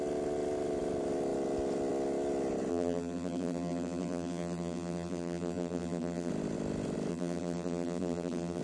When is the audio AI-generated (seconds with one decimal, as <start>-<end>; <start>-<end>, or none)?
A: 2.7-6.3; 7.1-8.6